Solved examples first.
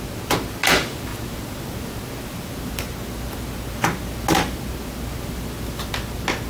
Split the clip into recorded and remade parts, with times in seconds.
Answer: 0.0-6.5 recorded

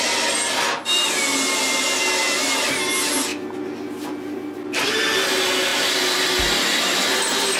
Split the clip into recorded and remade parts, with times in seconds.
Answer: 0.0-5.7 recorded; 5.7-6.4 remade; 6.4-7.6 recorded